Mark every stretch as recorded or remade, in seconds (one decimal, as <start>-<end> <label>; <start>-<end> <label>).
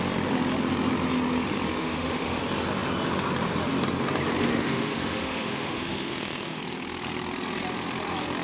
0.0-1.8 recorded; 1.8-2.4 remade; 2.4-4.5 recorded; 4.5-6.6 remade; 6.6-8.4 recorded